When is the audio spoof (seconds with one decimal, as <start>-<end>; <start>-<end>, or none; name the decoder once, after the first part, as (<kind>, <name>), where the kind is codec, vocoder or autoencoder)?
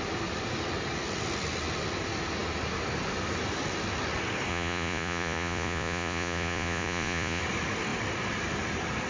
4.5-7.4 (vocoder, Vocos)